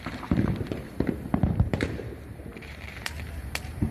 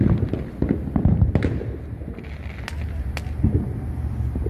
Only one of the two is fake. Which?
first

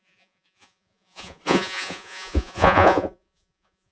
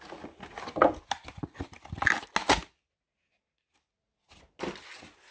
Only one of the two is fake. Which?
first